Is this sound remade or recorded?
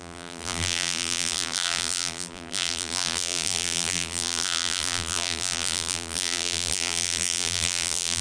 remade